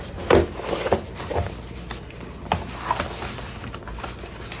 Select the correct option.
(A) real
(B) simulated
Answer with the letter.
A